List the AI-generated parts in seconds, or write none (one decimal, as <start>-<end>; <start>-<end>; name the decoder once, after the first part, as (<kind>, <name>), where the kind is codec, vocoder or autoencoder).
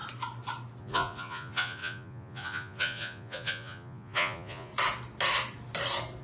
0.8-4.7 (vocoder, Vocos)